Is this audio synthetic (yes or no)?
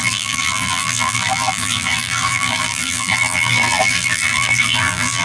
yes